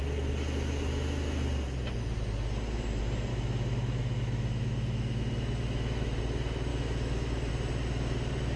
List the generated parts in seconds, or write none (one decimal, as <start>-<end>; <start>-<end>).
3.3-6.2; 6.7-7.5